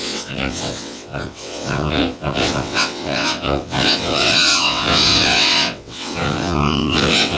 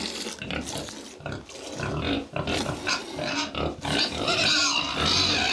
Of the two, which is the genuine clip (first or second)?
second